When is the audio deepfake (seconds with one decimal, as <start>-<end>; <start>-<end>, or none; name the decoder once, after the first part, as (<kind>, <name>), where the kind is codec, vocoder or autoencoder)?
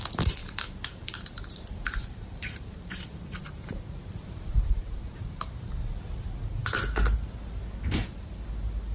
0.4-5.5 (vocoder, BigVGAN v2)